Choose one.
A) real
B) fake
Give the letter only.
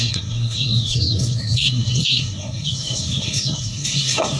B